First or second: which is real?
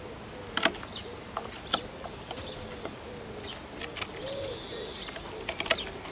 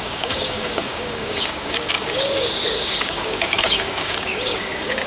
first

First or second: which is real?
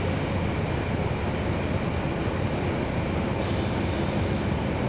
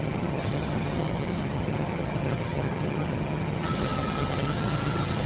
first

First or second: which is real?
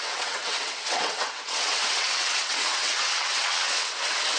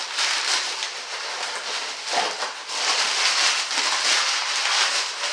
second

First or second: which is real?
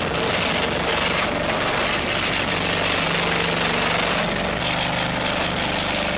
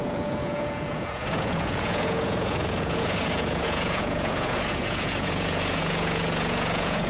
first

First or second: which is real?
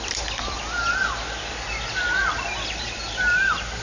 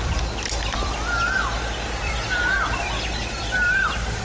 first